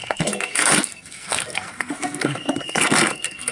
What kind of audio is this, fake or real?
fake